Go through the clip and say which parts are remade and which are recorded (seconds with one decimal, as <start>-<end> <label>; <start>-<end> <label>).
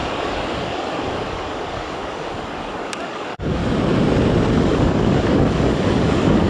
0.0-3.6 remade; 3.6-4.6 recorded; 4.6-6.5 remade